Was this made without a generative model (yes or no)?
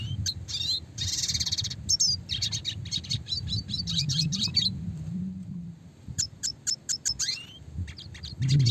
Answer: yes